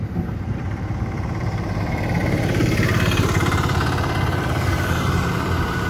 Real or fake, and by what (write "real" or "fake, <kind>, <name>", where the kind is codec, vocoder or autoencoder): fake, vocoder, BigVGAN v2